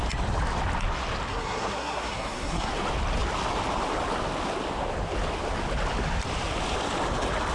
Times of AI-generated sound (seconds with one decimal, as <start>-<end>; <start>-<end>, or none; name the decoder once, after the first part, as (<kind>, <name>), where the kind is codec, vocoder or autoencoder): 1.3-2.7 (codec, SNAC)